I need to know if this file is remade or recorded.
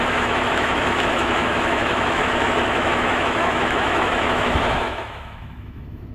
remade